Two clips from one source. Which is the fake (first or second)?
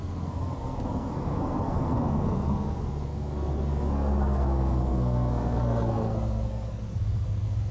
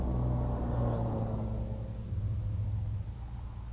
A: first